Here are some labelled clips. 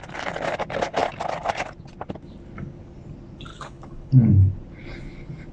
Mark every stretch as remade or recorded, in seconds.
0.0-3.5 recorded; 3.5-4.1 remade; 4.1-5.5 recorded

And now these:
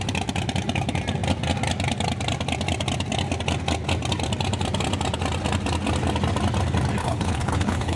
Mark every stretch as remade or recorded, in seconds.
0.0-7.0 recorded; 7.0-8.0 remade

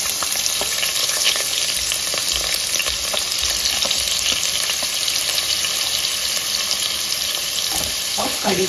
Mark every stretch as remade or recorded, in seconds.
0.0-1.0 recorded; 1.0-1.6 remade; 1.6-8.1 recorded; 8.1-8.7 remade

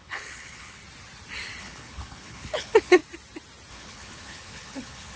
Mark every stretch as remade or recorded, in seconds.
0.0-0.8 remade; 0.8-1.6 recorded; 1.6-3.0 remade; 3.0-3.7 recorded; 3.7-5.2 remade

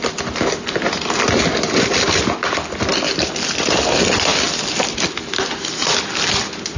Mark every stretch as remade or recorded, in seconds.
0.0-6.8 recorded

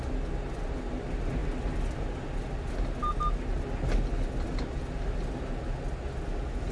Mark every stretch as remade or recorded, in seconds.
0.0-6.7 recorded

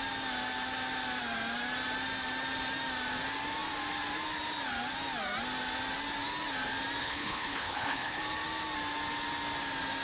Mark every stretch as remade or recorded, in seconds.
0.0-7.0 recorded; 7.0-8.2 remade; 8.2-10.0 recorded

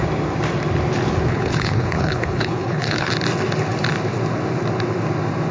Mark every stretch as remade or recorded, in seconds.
0.0-1.3 recorded; 1.3-3.1 remade; 3.1-5.5 recorded